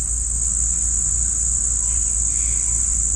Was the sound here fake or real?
real